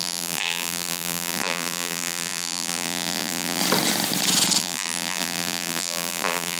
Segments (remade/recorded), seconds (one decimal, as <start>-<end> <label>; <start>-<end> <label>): 0.0-3.6 remade; 3.6-4.6 recorded; 4.6-6.6 remade

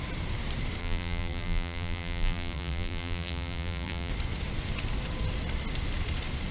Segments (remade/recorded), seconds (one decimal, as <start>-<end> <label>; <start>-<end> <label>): 0.0-0.8 recorded; 0.8-4.1 remade; 4.1-6.5 recorded

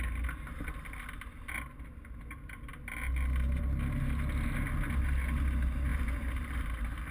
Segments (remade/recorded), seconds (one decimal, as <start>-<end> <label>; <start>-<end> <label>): 0.0-5.9 recorded; 5.9-7.1 remade

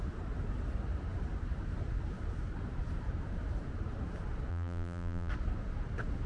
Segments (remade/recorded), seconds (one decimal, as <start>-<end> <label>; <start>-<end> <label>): 0.0-4.5 recorded; 4.5-5.3 remade; 5.3-6.3 recorded

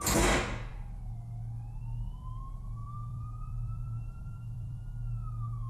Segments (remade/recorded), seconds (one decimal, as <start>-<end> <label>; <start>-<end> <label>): 0.0-2.8 recorded; 2.8-4.8 remade; 4.8-5.7 recorded

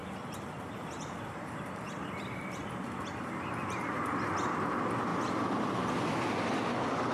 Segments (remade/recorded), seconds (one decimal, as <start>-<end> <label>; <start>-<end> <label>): 0.0-2.6 remade; 2.6-7.1 recorded